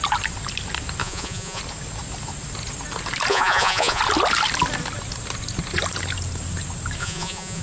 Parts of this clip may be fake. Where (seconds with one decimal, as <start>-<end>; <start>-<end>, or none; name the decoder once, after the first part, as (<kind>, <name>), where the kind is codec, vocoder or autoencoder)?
1.0-1.6 (vocoder, Vocos); 3.3-4.0; 7.0-7.6